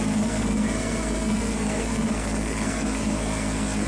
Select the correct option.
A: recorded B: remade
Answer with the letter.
B